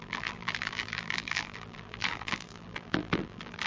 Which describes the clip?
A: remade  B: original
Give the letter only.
A